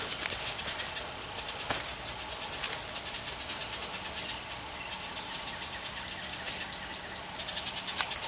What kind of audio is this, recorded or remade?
recorded